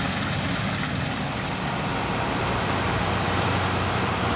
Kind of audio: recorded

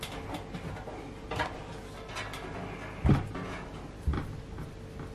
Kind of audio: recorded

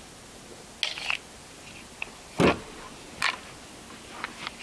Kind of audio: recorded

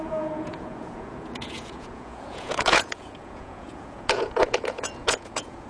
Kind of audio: remade